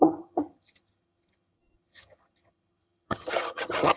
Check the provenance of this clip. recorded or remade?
remade